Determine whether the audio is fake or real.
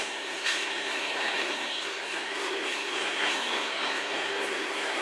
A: fake